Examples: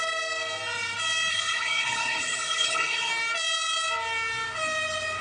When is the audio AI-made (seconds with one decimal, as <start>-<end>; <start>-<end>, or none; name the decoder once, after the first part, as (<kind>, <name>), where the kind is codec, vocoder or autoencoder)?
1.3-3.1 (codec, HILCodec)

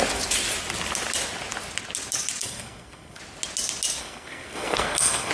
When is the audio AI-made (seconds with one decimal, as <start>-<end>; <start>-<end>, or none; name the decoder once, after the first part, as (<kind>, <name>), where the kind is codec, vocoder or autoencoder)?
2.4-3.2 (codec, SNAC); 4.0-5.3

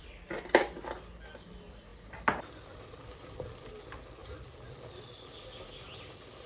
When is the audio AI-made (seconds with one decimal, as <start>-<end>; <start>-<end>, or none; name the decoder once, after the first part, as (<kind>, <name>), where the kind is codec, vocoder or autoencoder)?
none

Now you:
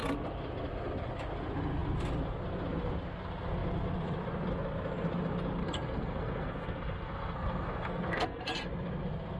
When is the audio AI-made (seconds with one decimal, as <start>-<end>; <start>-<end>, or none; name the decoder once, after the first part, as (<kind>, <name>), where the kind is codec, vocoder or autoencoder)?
5.6-8.4 (codec, SNAC)